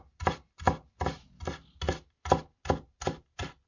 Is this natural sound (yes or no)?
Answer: yes